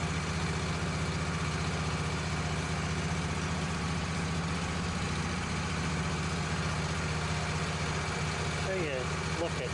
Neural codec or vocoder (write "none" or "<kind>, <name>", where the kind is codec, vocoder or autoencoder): none